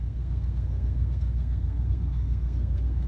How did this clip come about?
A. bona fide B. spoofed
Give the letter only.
B